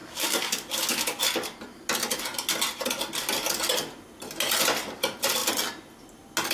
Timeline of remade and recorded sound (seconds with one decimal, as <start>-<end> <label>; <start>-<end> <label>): 0.0-1.2 remade; 1.2-6.5 recorded